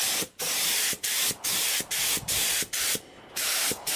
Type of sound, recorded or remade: remade